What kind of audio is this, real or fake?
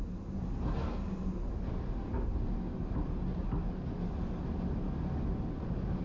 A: real